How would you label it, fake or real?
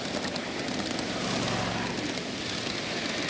real